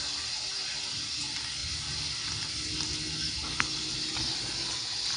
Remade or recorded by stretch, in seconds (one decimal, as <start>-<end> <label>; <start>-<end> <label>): 0.0-5.2 recorded